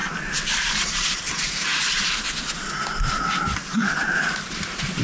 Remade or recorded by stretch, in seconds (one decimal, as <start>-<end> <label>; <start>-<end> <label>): 0.0-1.5 remade; 1.5-3.7 recorded; 3.7-5.0 remade